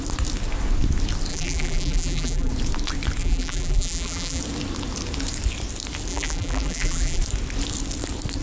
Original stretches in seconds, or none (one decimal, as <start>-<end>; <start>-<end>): 0.0-1.3; 2.5-3.2; 4.4-6.1; 7.2-8.4